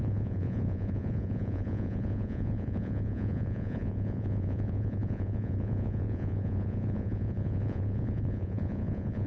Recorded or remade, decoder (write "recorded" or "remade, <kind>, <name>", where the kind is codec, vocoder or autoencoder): remade, vocoder, Vocos